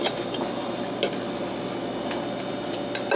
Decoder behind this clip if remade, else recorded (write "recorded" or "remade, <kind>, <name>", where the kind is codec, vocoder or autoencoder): recorded